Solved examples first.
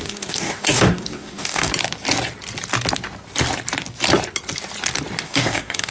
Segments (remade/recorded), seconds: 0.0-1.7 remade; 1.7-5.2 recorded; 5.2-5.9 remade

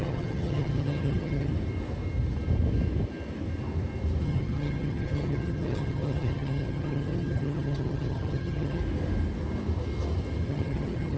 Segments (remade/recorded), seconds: 0.0-1.5 remade; 1.5-4.2 recorded; 4.2-8.8 remade; 8.8-10.5 recorded; 10.5-11.2 remade